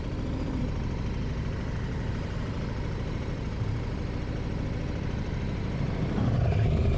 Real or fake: fake